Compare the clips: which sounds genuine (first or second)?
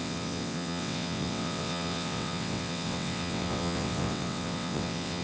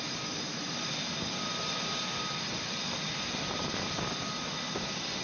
second